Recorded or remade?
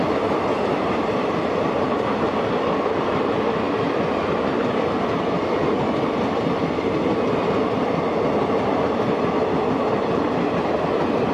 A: recorded